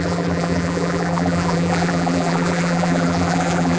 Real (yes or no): no